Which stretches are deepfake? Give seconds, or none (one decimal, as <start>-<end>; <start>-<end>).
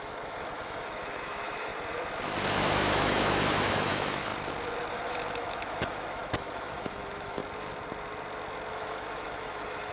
0.0-1.7; 2.5-4.3; 4.9-7.4; 8.7-9.9